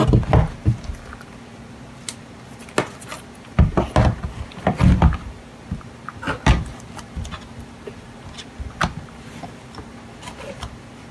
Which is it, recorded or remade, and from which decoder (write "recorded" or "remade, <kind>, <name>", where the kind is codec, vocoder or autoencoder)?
recorded